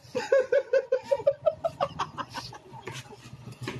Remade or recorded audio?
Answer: remade